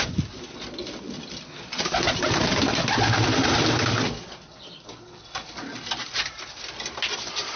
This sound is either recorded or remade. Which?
remade